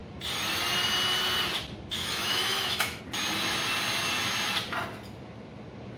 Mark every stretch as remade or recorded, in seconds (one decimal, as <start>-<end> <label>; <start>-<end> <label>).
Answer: 0.0-2.0 recorded; 2.0-3.0 remade; 3.0-6.0 recorded